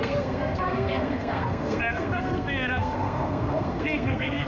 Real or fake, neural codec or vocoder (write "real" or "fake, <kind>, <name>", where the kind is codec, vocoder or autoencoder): fake, codec, SNAC